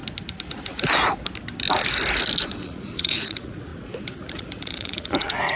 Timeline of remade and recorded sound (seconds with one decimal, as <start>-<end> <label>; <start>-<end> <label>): 0.0-2.5 recorded; 2.5-3.7 remade; 3.7-4.3 recorded; 4.3-5.6 remade